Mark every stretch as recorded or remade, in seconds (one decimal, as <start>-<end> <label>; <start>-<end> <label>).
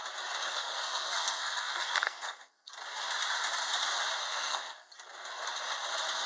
0.0-0.5 recorded; 0.5-2.7 remade; 2.7-4.3 recorded; 4.3-4.9 remade; 4.9-6.3 recorded